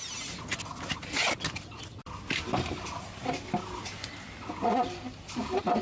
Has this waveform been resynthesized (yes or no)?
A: no